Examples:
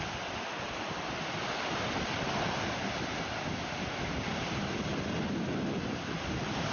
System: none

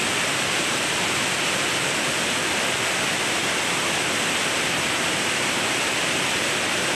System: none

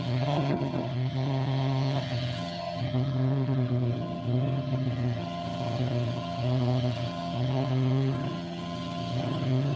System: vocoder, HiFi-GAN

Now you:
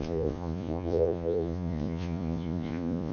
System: vocoder, Vocos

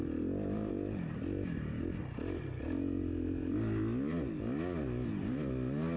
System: none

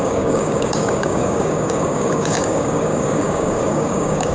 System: codec, DAC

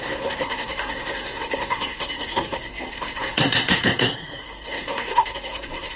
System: codec, SNAC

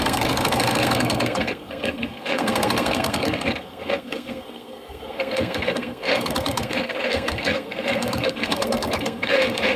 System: codec, SNAC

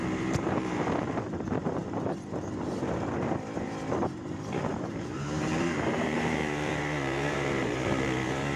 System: vocoder, BigVGAN v2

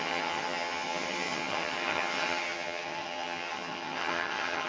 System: vocoder, HiFi-GAN